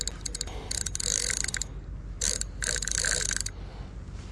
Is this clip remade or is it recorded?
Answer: recorded